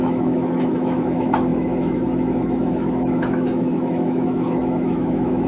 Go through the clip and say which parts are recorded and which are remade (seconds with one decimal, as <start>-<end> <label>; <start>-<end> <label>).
0.0-5.5 remade